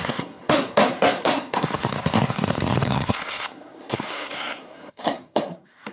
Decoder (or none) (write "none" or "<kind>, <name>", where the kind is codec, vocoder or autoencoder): codec, SNAC